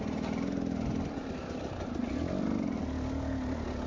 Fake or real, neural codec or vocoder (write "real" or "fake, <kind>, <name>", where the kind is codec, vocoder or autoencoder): real